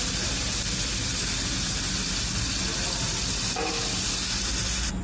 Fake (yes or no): no